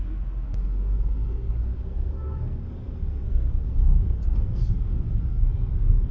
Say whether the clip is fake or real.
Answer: fake